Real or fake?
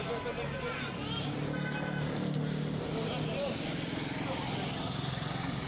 real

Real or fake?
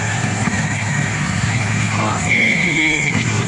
fake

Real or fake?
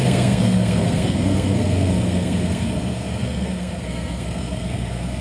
fake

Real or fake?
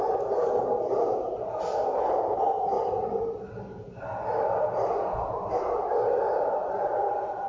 real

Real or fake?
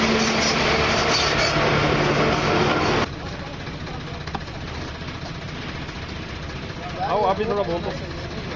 real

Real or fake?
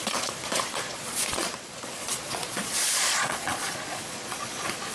fake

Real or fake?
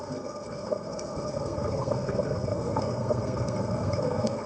fake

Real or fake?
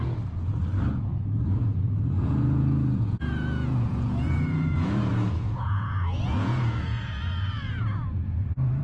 fake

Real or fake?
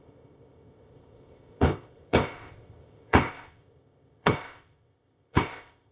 fake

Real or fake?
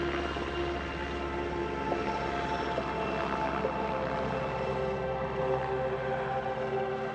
real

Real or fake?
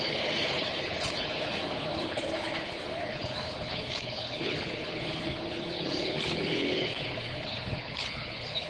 fake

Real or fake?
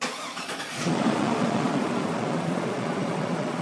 fake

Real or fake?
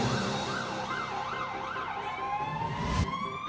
fake